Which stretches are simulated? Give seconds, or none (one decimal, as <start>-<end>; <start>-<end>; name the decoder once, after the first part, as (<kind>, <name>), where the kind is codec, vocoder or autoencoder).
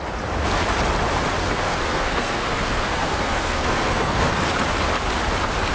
1.4-4.3 (codec, SNAC)